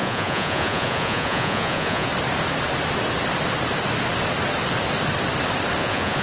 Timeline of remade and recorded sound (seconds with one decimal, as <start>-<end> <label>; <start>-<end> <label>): 0.0-2.1 remade; 2.1-5.8 recorded; 5.8-6.2 remade